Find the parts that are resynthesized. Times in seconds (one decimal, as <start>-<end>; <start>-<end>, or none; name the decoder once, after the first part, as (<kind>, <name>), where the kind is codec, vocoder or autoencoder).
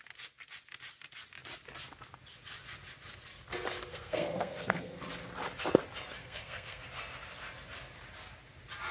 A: 3.9-5.0 (codec, SNAC); 6.2-6.8